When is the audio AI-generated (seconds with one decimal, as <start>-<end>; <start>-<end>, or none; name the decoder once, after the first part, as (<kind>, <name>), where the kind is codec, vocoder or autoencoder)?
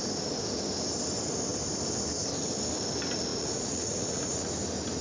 3.3-4.5 (vocoder, Vocos)